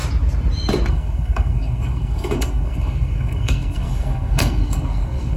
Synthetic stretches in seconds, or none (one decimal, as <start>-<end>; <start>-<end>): 0.9-5.4